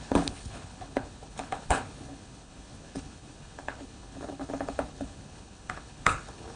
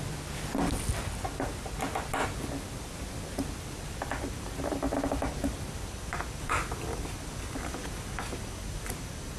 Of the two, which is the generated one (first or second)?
first